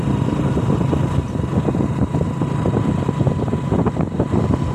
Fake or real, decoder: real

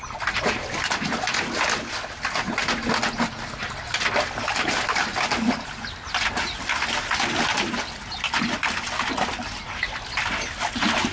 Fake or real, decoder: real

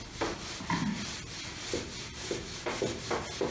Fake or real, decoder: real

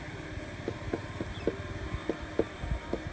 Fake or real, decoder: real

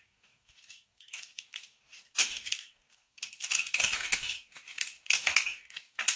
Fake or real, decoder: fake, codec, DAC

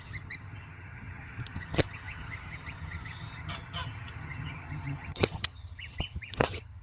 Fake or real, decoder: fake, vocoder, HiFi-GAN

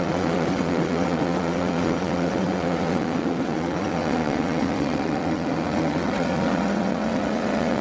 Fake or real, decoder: fake, vocoder, WaveNeXt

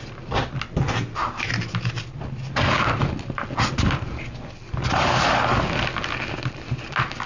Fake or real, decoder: real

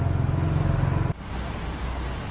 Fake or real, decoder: real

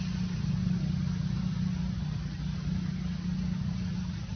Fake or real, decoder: real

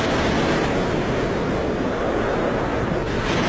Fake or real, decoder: real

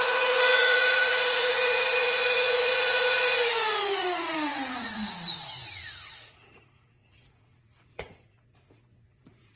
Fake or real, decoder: fake, vocoder, Vocos